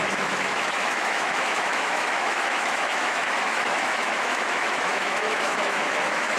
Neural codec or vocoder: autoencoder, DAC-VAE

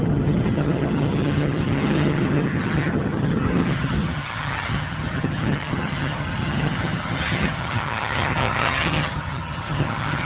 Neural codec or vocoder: vocoder, HiFi-GAN